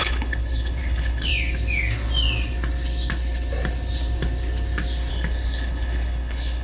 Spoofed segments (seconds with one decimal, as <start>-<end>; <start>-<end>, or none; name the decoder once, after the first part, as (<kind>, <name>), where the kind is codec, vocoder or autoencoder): 0.0-1.3 (codec, HILCodec); 5.1-6.6